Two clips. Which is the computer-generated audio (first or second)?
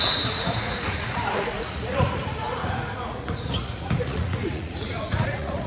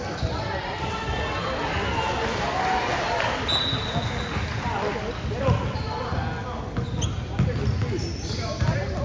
first